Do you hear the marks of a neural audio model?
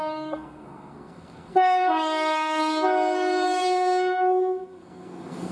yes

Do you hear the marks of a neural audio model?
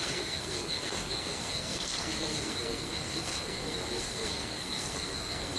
yes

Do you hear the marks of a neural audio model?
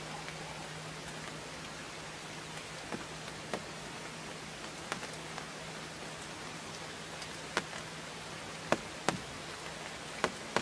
no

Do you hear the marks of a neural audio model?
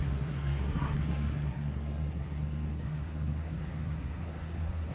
yes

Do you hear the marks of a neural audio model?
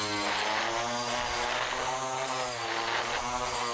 no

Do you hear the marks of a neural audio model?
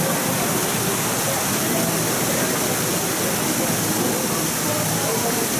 no